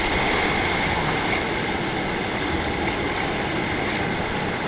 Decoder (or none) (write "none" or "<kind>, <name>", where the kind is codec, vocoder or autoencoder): none